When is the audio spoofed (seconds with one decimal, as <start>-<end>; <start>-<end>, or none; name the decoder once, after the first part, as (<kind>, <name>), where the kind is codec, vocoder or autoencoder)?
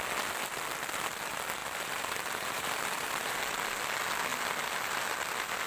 1.6-3.5 (vocoder, BigVGAN v2)